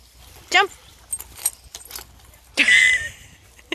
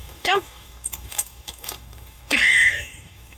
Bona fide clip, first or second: first